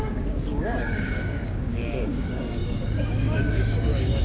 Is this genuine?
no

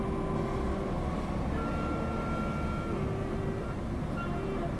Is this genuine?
yes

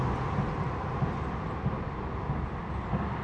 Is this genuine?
yes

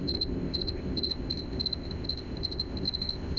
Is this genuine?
no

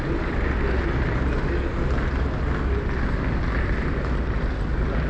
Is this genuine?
yes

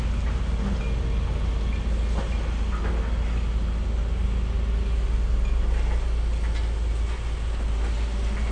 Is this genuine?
yes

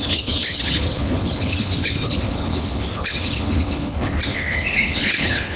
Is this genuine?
no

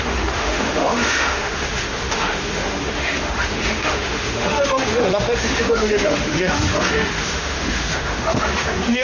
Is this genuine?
no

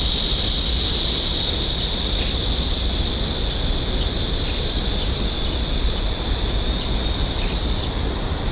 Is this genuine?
yes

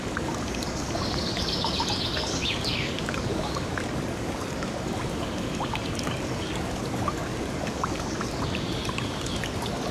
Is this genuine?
no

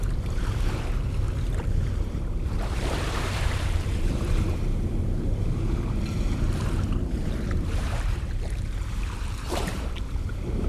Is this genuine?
no